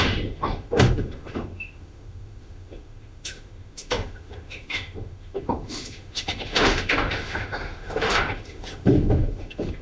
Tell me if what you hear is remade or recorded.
remade